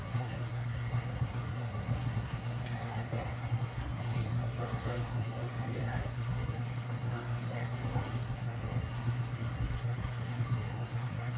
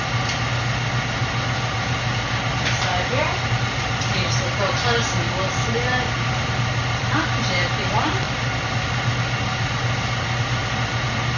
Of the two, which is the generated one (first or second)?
first